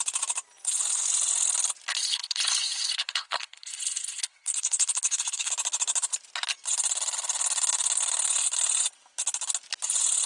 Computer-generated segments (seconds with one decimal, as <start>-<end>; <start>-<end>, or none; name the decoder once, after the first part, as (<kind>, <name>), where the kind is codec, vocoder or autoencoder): 1.9-5.5 (codec, HILCodec)